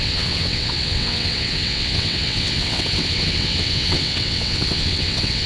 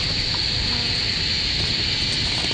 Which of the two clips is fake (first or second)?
first